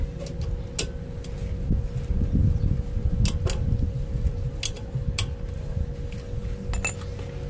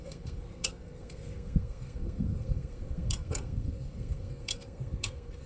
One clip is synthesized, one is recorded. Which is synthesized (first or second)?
second